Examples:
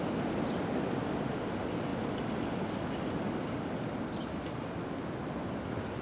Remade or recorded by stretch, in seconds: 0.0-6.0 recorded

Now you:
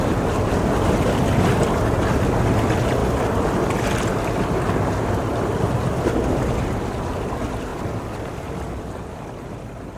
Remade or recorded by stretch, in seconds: 0.0-3.0 recorded; 3.0-3.6 remade; 3.6-10.0 recorded

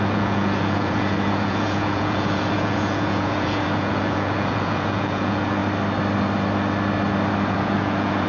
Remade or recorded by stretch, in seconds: 0.0-5.6 remade; 5.6-7.5 recorded; 7.5-8.3 remade

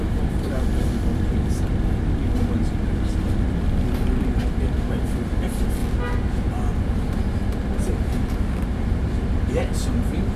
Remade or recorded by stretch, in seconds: 0.0-5.8 remade; 5.8-7.2 recorded; 7.2-10.4 remade

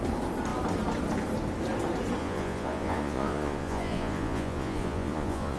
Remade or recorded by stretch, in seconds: 0.0-2.2 recorded; 2.2-5.6 remade

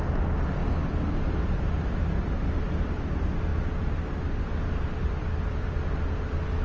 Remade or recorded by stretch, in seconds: 0.0-3.5 recorded; 3.5-5.8 remade; 5.8-6.6 recorded

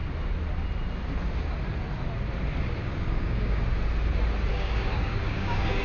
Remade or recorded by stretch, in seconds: 0.0-2.8 recorded; 2.8-3.6 remade; 3.6-4.5 recorded; 4.5-5.8 remade